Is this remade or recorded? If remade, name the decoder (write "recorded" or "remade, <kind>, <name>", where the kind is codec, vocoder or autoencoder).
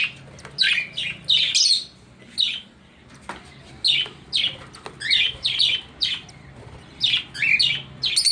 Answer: recorded